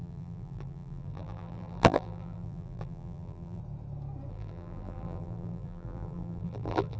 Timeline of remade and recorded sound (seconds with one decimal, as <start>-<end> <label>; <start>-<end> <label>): 0.0-3.6 remade; 3.6-4.3 recorded; 4.3-7.0 remade